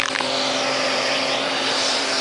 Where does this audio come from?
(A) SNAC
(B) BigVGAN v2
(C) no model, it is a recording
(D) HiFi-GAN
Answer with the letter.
B